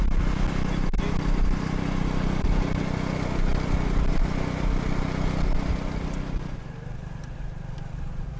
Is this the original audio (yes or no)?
yes